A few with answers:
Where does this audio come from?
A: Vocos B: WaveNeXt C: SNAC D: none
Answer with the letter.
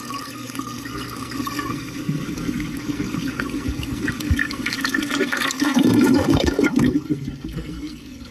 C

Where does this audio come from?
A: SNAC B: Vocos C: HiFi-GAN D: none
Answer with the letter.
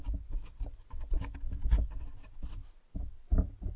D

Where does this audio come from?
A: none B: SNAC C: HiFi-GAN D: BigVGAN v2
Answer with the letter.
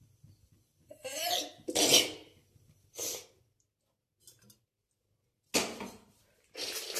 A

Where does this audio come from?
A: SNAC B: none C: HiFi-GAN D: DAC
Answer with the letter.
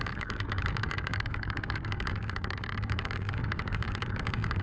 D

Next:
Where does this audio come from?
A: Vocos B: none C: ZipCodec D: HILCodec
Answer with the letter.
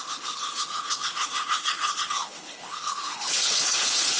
D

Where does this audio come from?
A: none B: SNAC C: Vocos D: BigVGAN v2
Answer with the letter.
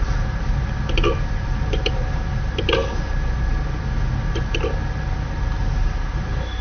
A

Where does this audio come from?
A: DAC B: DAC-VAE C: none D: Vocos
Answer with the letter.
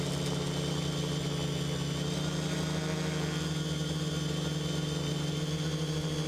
C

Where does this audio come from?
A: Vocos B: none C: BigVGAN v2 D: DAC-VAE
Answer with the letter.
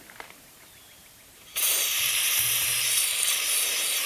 C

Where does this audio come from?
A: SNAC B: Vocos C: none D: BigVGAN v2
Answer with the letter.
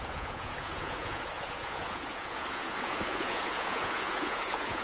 B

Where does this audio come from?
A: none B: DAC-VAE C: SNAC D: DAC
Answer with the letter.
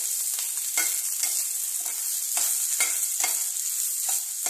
A